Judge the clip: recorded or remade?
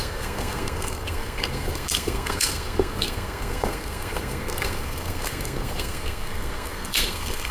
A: remade